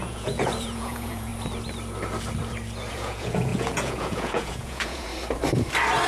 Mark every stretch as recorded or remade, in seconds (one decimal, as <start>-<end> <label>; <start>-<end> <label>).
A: 0.0-1.3 remade; 1.3-2.9 recorded; 2.9-5.1 remade; 5.1-6.1 recorded